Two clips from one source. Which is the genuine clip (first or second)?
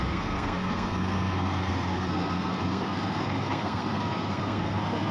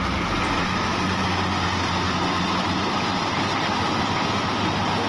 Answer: second